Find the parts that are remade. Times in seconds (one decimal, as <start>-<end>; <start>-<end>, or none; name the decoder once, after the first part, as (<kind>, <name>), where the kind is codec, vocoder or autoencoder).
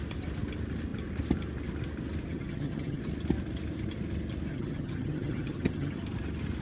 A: 2.3-3.0 (vocoder, HiFi-GAN); 4.5-6.0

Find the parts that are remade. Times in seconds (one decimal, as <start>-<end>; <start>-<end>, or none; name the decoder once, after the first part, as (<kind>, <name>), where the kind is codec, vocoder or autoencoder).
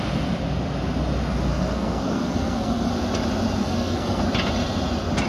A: 1.5-2.9 (codec, SNAC); 3.6-4.2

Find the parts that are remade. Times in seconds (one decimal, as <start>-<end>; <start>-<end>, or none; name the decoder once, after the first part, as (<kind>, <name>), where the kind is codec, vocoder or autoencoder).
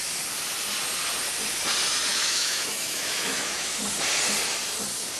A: 2.1-3.8 (autoencoder, DAC-VAE)